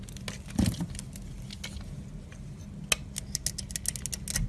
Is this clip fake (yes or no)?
no